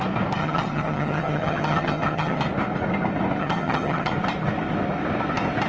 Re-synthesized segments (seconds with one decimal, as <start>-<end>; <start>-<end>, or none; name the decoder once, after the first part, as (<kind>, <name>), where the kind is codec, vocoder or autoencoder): 0.4-2.4 (vocoder, HiFi-GAN); 3.4-4.1